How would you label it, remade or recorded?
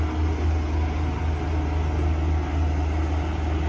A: recorded